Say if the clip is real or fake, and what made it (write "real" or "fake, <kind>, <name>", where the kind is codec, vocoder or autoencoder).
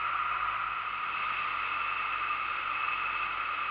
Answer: real